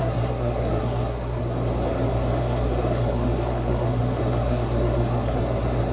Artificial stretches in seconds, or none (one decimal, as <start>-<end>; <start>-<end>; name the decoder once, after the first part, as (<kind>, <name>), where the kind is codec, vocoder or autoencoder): 0.0-1.4 (codec, SNAC); 2.4-5.4